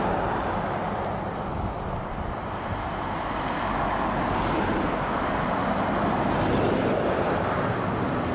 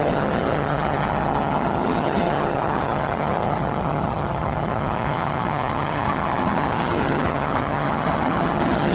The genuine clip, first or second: first